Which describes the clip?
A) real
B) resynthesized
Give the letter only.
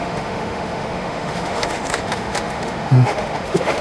B